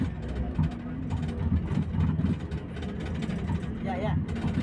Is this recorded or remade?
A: recorded